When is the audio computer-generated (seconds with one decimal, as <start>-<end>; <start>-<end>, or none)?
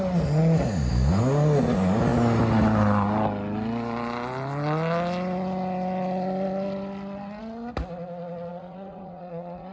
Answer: 8.5-9.7